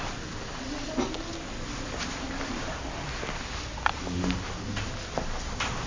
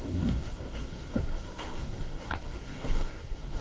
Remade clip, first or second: second